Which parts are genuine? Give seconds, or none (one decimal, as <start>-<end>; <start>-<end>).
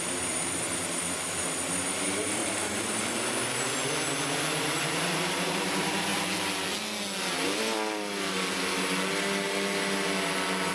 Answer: 2.4-4.6; 6.1-10.7